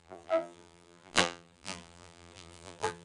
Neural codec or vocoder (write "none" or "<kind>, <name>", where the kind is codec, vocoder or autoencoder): vocoder, BigVGAN v2